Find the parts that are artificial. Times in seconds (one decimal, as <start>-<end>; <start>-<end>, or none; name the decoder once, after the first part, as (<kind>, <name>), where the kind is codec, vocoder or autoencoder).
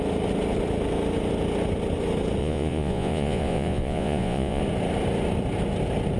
2.4-4.6 (vocoder, Vocos)